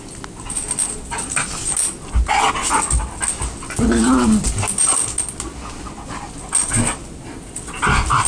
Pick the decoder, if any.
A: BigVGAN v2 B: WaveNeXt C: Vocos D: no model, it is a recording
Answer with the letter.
D